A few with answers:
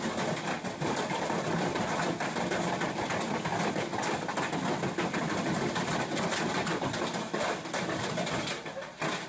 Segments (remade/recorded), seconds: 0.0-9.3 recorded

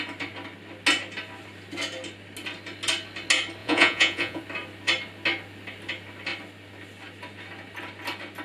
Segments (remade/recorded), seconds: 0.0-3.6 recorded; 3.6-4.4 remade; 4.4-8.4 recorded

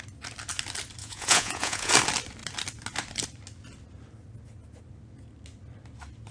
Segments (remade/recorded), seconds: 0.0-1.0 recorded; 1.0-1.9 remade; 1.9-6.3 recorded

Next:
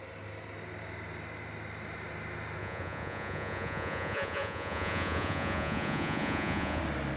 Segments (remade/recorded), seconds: 0.0-2.6 recorded; 2.6-6.8 remade; 6.8-7.2 recorded

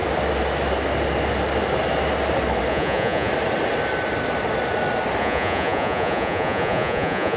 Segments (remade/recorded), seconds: 0.0-2.7 recorded; 2.7-3.3 remade; 3.3-5.2 recorded; 5.2-7.4 remade

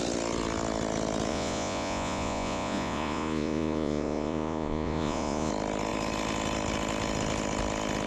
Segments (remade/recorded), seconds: 0.0-1.3 recorded; 1.3-5.5 remade; 5.5-8.1 recorded

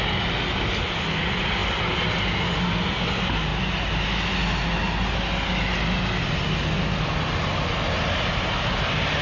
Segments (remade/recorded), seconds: 0.0-9.2 recorded